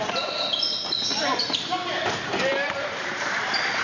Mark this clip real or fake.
fake